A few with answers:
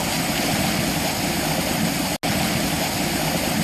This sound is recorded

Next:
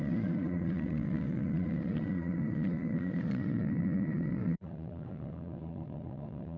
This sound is remade